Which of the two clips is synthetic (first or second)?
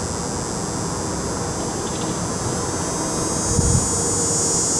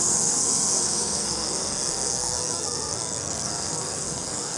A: second